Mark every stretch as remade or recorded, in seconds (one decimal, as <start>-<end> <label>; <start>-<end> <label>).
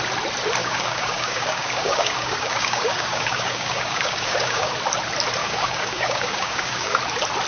0.0-0.6 recorded; 0.6-4.7 remade; 4.7-5.4 recorded; 5.4-7.0 remade; 7.0-7.5 recorded